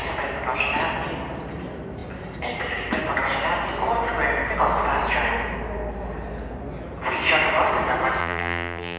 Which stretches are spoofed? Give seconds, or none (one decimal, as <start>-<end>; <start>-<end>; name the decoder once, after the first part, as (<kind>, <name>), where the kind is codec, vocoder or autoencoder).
8.2-9.0 (vocoder, BigVGAN v2)